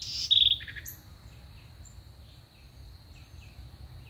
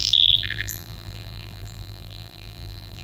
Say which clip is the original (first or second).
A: first